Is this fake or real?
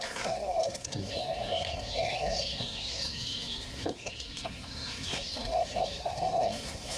fake